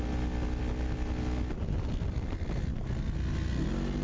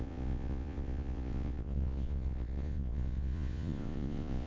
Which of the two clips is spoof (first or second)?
second